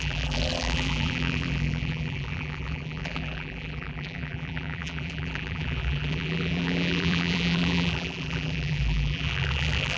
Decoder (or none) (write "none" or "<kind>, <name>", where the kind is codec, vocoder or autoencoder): vocoder, BigVGAN v2